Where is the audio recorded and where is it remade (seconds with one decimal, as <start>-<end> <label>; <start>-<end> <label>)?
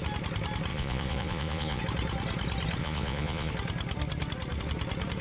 0.0-0.7 recorded; 0.7-1.8 remade; 1.8-2.8 recorded; 2.8-3.5 remade; 3.5-5.2 recorded